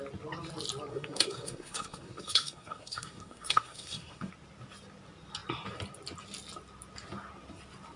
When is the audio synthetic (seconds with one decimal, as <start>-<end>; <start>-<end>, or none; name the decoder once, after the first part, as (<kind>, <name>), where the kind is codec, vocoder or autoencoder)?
0.9-4.3 (codec, SNAC)